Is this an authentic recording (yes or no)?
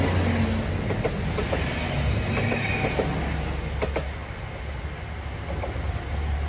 yes